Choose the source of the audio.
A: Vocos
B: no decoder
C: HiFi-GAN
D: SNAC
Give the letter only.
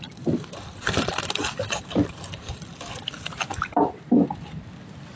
B